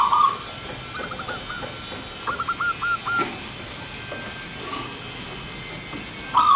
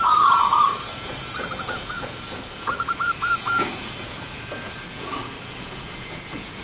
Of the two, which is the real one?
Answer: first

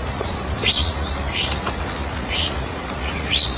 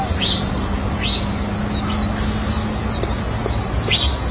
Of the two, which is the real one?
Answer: second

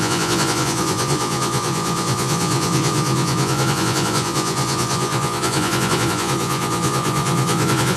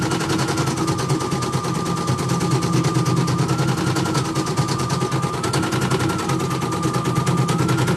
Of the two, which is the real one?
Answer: second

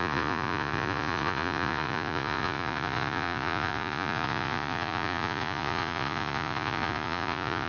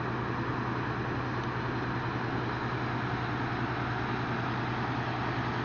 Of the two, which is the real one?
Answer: second